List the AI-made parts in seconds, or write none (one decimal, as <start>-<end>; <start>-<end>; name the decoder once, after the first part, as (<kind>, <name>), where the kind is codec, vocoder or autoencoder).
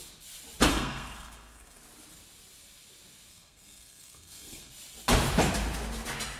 0.7-1.8 (codec, SNAC); 3.3-4.7